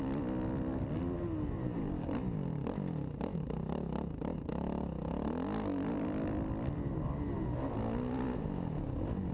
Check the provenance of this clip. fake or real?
real